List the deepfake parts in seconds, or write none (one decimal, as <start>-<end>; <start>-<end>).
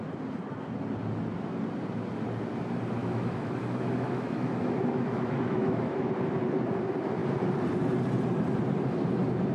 3.0-6.1